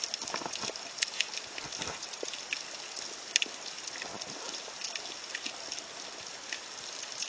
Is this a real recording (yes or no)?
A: yes